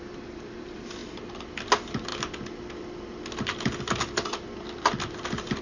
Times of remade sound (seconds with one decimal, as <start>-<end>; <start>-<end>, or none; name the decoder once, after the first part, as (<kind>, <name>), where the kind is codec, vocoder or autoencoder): none